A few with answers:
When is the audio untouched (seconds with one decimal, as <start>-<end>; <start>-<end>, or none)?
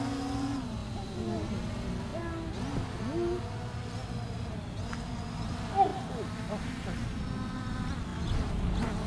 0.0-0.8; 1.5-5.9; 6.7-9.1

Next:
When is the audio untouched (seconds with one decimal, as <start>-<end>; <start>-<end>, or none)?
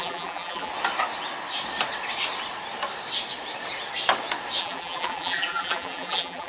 0.7-4.6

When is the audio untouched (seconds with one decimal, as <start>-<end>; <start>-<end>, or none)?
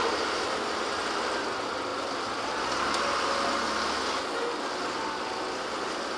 0.0-6.2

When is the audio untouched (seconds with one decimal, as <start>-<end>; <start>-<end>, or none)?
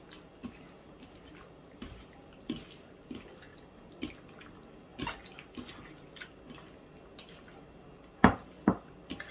0.0-0.4; 2.4-3.5; 4.1-9.3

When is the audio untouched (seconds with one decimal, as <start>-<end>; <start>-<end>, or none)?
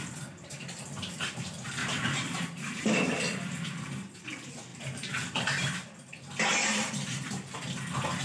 0.0-1.8; 3.0-4.7; 5.7-8.2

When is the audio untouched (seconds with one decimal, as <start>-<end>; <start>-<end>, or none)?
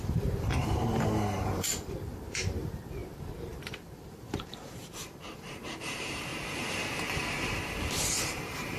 6.3-8.0